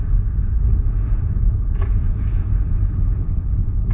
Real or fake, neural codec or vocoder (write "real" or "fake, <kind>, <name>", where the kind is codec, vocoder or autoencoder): fake, vocoder, Vocos